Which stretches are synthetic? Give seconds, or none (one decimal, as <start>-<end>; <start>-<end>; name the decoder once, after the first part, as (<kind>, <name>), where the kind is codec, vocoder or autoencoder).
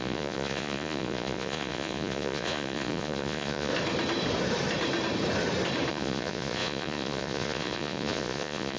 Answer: 0.0-3.7 (vocoder, Vocos); 5.9-8.8